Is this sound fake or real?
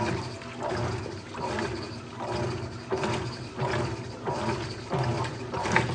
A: real